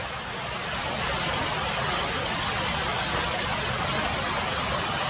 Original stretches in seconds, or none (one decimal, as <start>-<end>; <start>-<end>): 0.0-5.1